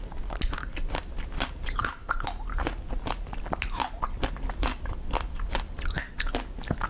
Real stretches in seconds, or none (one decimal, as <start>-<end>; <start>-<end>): 0.0-6.9